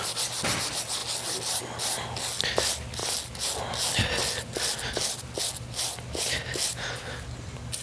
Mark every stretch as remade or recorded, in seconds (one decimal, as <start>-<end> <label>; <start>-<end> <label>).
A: 0.0-7.8 recorded